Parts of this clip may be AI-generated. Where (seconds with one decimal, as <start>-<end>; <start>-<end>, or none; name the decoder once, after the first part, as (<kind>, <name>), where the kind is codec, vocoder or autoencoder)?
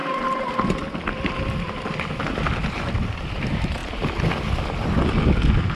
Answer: none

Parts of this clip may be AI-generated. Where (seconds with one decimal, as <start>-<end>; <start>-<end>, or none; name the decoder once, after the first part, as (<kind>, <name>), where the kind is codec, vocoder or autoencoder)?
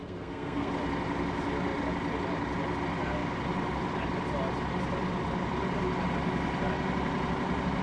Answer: 0.0-0.7 (codec, SNAC)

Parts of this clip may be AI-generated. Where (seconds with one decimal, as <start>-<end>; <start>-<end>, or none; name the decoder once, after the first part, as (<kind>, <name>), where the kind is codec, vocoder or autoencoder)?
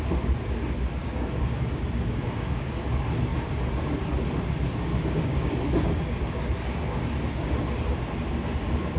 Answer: 1.0-2.8 (codec, DAC); 4.9-7.0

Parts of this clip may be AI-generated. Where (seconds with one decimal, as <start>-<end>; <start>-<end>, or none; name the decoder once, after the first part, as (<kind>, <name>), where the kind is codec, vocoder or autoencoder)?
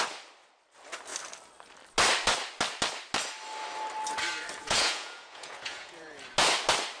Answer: 4.6-6.2 (vocoder, Vocos)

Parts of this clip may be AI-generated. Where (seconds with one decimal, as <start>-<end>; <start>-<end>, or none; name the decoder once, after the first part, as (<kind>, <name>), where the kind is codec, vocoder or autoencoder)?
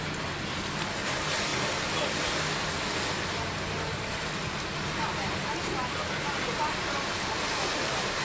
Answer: none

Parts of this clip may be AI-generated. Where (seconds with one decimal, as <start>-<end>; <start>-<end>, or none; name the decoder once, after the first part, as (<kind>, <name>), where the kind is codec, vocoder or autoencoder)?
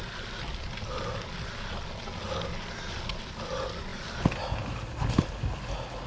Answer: none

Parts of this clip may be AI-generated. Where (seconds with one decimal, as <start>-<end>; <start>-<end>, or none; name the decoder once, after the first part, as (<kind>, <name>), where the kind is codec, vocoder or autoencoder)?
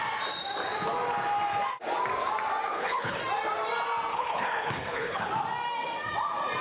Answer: 2.7-3.2 (codec, HILCodec); 4.1-5.3